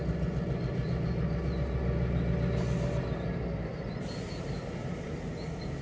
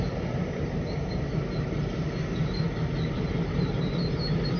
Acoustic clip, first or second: first